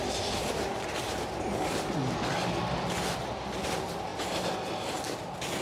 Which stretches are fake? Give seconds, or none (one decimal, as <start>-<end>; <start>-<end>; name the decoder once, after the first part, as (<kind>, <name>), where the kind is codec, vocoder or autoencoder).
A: none